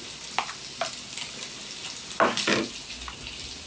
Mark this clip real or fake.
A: real